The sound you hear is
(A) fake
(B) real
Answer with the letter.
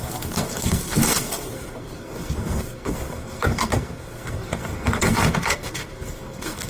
A